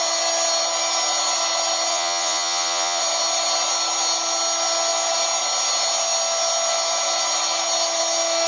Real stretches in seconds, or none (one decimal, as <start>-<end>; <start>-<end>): 0.0-1.9; 3.0-8.5